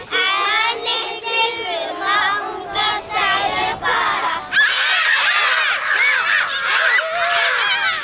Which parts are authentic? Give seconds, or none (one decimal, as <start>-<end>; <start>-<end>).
0.0-4.9; 5.5-8.0